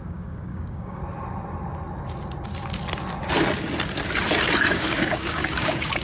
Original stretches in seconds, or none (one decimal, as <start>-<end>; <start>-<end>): 1.0-4.6